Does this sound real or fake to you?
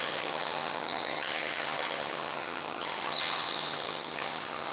fake